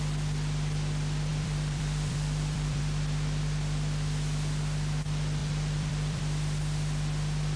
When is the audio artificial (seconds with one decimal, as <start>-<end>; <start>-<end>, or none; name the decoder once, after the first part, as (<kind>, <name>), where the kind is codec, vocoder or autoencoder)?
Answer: 1.3-2.8 (vocoder, BigVGAN v2); 5.4-6.2